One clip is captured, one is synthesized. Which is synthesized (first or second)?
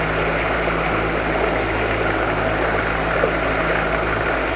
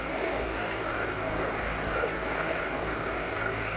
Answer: second